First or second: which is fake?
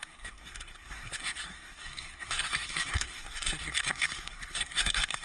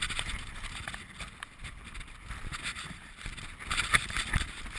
first